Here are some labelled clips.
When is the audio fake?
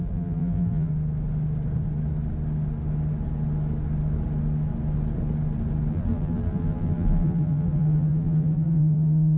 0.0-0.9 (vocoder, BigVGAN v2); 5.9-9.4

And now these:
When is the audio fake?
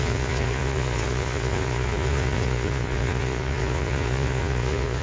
0.0-5.0 (vocoder, Vocos)